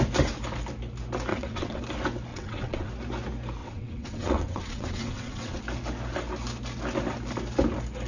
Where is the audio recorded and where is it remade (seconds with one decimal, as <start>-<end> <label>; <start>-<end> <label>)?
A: 0.0-1.3 recorded; 1.3-1.8 remade; 1.8-2.3 recorded; 2.3-2.9 remade; 2.9-3.6 recorded; 3.6-5.6 remade; 5.6-8.1 recorded